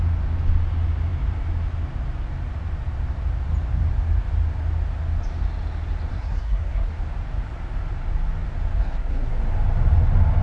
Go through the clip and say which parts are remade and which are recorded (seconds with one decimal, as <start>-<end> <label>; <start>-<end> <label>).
0.0-6.1 recorded; 6.1-6.9 remade; 6.9-8.8 recorded; 8.8-9.3 remade; 9.3-10.4 recorded